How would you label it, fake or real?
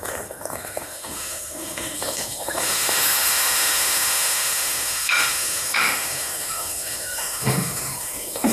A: fake